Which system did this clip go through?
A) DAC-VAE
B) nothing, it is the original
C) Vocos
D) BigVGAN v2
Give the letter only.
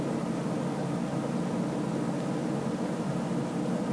B